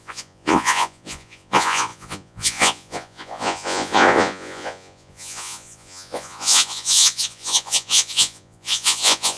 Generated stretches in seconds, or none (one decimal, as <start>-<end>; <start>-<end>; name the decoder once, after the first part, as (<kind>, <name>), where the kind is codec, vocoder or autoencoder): 0.0-9.4 (vocoder, Vocos)